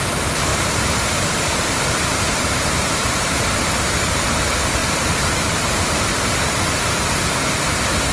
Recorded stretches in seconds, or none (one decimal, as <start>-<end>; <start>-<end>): 0.0-0.5; 3.3-4.8; 7.0-8.1